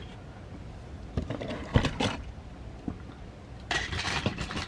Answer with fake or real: real